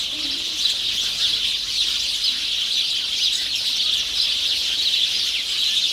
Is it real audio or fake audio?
real